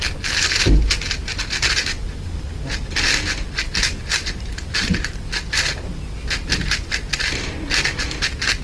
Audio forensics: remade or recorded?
recorded